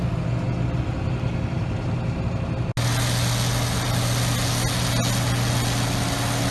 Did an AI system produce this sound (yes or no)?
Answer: no